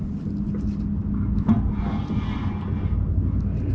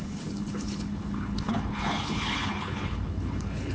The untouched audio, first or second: first